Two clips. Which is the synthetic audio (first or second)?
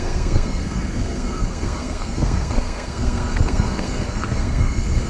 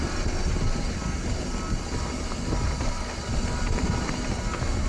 first